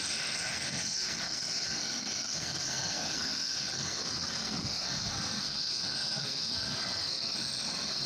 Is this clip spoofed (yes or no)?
yes